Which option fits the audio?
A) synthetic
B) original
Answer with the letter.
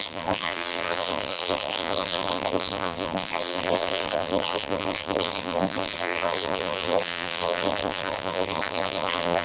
A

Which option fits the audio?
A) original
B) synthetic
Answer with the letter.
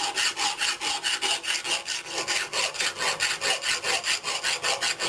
A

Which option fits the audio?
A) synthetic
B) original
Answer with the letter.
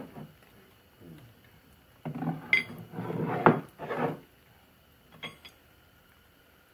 B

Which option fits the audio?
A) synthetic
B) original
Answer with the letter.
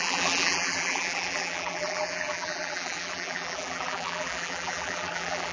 A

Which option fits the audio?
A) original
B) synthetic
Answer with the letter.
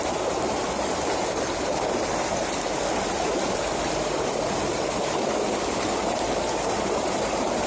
A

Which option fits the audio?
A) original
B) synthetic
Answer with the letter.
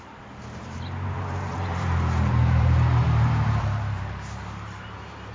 B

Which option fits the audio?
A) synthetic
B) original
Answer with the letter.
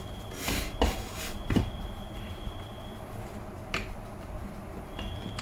B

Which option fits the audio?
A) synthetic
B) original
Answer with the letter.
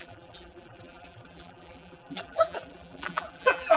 A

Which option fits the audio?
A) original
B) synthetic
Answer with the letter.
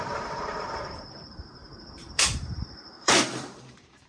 B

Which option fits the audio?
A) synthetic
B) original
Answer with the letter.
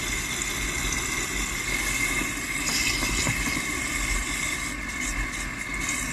B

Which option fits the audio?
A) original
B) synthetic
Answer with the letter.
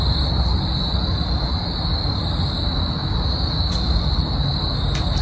A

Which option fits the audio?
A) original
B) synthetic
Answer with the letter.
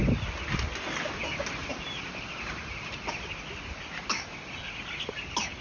A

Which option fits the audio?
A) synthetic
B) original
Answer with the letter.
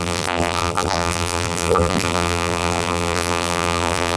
A